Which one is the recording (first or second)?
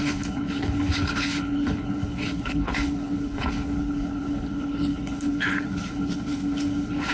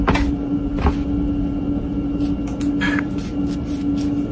second